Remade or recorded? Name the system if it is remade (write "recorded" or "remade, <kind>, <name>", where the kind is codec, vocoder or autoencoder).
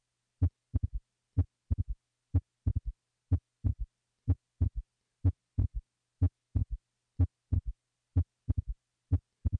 recorded